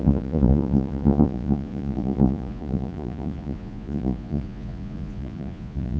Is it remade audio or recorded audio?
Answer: remade